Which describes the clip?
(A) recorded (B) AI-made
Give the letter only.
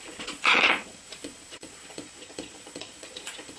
B